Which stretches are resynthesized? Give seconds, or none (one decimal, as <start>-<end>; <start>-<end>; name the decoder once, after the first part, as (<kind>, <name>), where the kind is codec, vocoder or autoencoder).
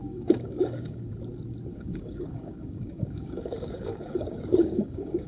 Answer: 0.0-1.1 (codec, DAC); 1.7-5.3